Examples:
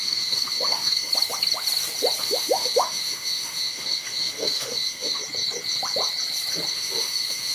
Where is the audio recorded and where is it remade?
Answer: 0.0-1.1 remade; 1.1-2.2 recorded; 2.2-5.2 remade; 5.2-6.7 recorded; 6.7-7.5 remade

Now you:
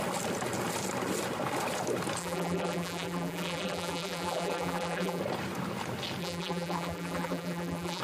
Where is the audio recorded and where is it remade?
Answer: 0.0-2.2 recorded; 2.2-5.2 remade; 5.2-6.2 recorded; 6.2-8.0 remade

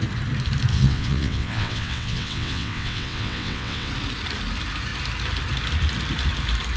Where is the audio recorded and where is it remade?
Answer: 0.0-0.7 recorded; 0.7-3.9 remade; 3.9-6.8 recorded